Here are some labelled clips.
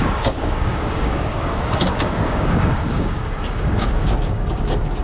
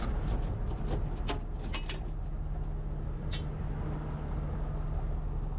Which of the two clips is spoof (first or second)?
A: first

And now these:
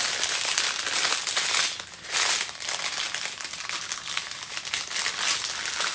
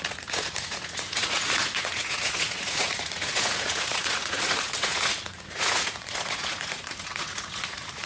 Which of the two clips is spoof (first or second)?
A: second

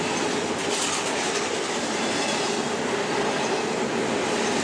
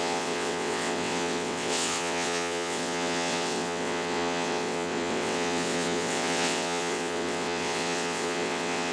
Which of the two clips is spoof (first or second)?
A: second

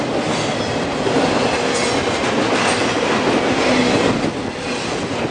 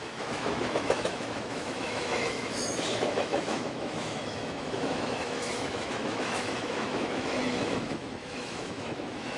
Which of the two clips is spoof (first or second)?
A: second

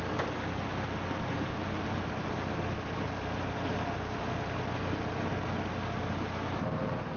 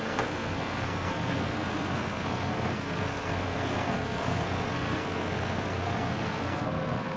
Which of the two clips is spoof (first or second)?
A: second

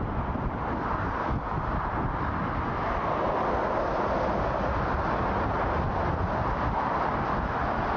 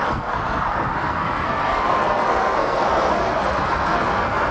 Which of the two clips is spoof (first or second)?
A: second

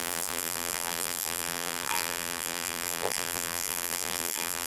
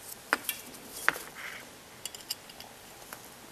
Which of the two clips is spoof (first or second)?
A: first